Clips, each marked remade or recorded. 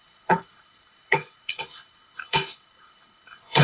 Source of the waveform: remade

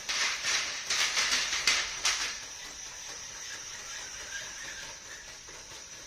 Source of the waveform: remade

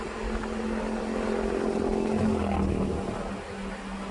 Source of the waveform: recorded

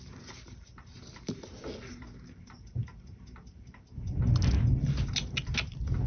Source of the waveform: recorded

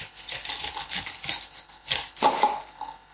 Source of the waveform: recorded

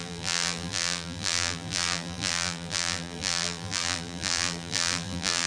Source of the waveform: remade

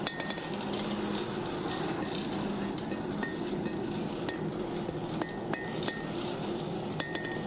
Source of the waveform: recorded